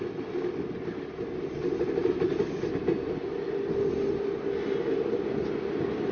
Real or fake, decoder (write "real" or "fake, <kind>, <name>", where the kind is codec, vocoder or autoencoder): real